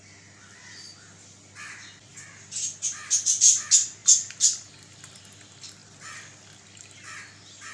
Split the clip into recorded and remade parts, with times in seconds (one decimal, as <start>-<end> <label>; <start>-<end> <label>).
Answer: 0.0-7.7 recorded